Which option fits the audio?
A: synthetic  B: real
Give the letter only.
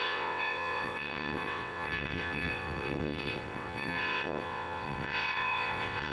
A